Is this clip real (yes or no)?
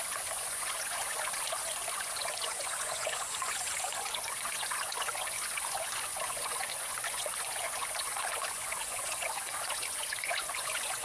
no